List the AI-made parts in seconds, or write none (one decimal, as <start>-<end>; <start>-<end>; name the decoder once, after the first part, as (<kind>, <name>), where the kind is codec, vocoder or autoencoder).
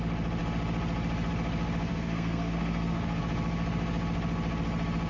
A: 1.9-3.2 (codec, SNAC)